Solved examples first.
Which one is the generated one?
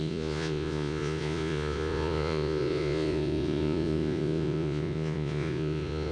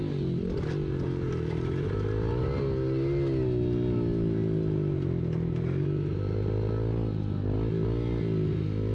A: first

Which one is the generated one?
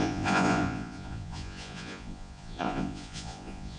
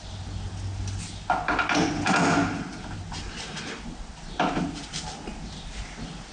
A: first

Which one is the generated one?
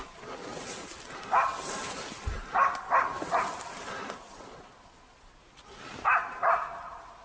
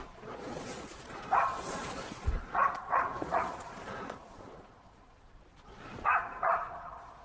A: second